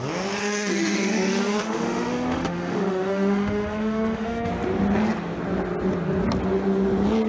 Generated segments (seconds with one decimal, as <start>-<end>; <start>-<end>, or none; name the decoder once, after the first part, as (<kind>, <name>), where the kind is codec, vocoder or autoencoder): 0.4-4.5 (autoencoder, DAC-VAE)

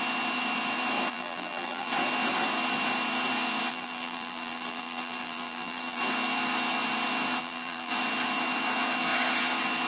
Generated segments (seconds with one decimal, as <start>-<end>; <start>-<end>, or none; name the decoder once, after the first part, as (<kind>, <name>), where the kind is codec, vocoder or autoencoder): 1.1-1.9 (vocoder, BigVGAN v2); 3.7-6.0; 7.4-7.9

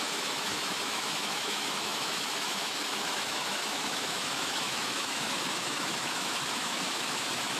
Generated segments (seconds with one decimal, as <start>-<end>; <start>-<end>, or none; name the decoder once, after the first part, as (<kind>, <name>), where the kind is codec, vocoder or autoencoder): 0.0-7.6 (autoencoder, DAC-VAE)

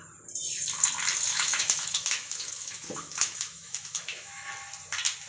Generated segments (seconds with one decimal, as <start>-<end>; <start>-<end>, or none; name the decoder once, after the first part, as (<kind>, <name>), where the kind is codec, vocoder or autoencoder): 1.3-4.5 (autoencoder, DAC-VAE)

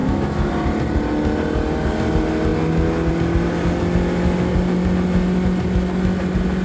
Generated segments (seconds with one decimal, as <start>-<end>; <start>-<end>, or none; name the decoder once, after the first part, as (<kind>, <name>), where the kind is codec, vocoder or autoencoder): 0.0-0.5 (autoencoder, DAC-VAE)

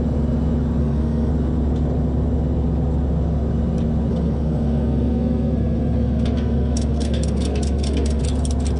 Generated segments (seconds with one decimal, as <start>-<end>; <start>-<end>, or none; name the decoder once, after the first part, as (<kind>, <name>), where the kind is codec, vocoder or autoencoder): 0.8-1.3 (codec, SNAC); 4.1-8.2

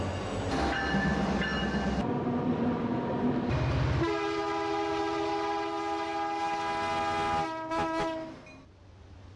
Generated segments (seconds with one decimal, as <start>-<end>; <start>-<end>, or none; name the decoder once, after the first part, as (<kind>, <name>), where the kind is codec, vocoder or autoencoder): none

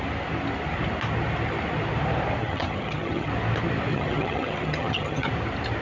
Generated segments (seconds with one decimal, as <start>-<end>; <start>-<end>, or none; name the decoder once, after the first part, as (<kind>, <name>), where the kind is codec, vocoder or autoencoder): 2.4-3.3 (vocoder, HiFi-GAN); 3.9-5.3